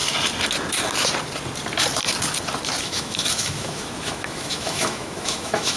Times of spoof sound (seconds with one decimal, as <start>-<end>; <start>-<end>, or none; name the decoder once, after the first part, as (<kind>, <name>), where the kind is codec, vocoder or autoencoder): 2.8-5.8 (autoencoder, DAC-VAE)